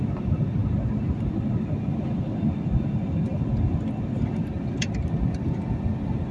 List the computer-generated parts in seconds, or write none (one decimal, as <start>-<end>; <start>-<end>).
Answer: none